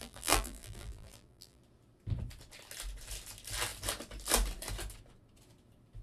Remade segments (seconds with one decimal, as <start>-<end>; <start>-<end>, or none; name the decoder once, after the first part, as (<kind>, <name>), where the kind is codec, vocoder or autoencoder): 0.0-1.6 (vocoder, BigVGAN v2)